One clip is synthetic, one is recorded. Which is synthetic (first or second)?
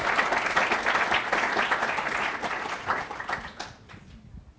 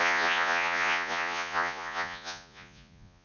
second